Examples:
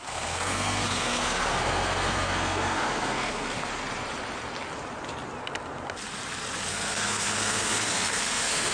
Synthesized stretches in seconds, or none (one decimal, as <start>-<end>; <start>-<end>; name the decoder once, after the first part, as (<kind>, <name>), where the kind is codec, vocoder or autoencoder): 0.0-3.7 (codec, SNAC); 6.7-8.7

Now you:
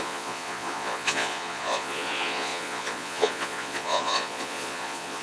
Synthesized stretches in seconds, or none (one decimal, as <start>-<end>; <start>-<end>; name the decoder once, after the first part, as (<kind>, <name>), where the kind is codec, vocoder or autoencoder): 0.0-5.2 (vocoder, Vocos)

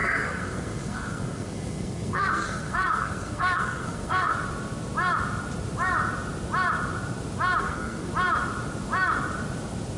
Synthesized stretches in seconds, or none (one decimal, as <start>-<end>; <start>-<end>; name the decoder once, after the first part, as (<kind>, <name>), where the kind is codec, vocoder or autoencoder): 0.0-4.3 (codec, SNAC); 7.6-8.1

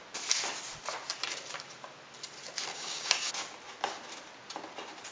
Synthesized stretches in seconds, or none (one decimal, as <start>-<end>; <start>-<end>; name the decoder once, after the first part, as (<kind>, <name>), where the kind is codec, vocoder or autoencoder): 2.7-3.3 (codec, DAC)